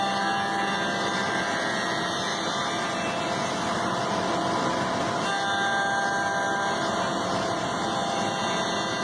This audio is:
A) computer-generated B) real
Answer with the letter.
B